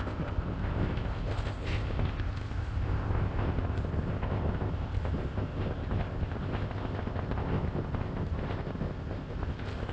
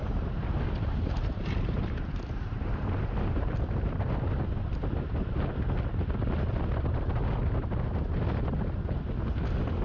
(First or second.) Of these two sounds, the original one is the second